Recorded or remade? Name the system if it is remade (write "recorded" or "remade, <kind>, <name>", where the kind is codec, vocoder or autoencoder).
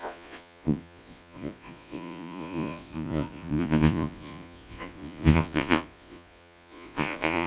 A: remade, vocoder, Vocos